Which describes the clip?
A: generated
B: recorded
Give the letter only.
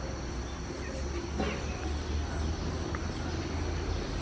B